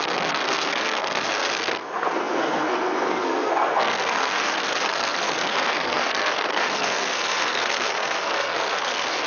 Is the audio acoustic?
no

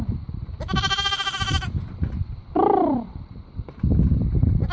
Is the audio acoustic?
no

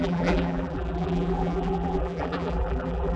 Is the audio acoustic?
no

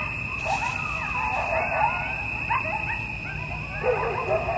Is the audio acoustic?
yes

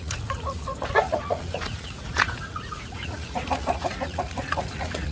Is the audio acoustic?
no